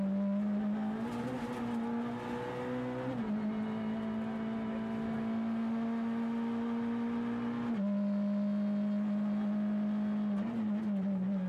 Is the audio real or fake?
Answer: real